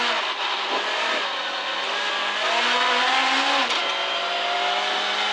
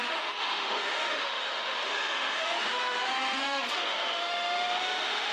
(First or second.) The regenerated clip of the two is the second